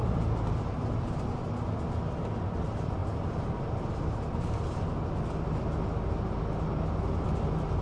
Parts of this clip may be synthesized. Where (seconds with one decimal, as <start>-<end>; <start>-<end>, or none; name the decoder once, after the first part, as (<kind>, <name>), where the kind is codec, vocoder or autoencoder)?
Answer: none